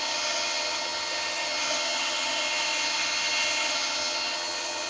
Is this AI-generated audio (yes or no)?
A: yes